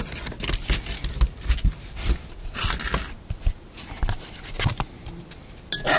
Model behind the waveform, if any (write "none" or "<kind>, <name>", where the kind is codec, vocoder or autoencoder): none